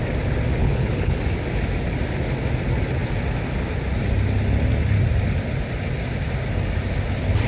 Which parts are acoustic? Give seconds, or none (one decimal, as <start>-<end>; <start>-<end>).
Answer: 0.0-0.6; 1.2-7.5